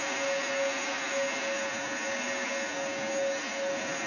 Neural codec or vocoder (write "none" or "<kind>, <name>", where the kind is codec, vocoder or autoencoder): none